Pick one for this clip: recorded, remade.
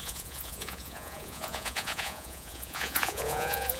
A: remade